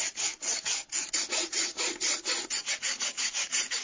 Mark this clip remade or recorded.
remade